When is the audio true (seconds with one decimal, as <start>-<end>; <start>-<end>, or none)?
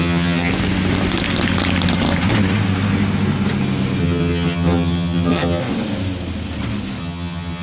0.5-4.0; 5.6-7.0